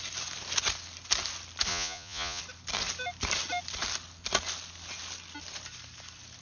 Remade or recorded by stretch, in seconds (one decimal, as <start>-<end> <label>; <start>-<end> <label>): 0.0-1.7 recorded; 1.7-2.4 remade; 2.4-6.4 recorded